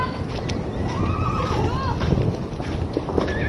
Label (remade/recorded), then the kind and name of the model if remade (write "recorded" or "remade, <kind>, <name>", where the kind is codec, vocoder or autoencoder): recorded